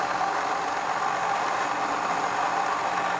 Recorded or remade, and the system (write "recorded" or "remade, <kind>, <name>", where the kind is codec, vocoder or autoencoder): recorded